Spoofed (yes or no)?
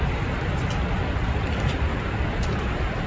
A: no